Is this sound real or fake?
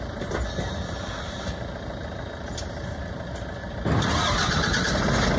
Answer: real